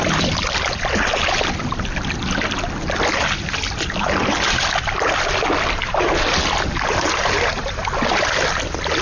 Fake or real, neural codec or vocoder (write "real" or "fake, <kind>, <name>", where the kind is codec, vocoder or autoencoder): real